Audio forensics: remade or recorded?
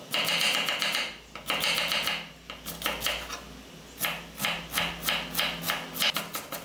recorded